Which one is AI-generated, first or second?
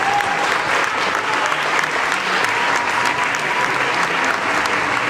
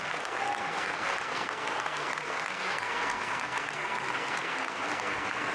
second